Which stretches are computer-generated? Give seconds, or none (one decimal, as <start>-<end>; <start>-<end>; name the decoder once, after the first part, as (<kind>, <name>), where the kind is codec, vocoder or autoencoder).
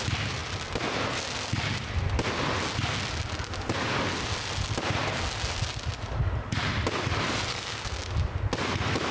7.5-8.0 (codec, SNAC)